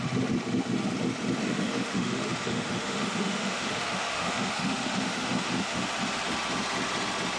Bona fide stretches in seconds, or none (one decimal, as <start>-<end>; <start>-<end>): 0.0-1.4; 5.8-7.4